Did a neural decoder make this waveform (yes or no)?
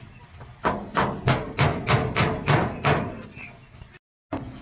no